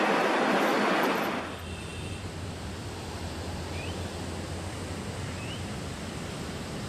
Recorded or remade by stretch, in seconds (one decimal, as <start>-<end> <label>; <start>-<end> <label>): 0.0-6.9 recorded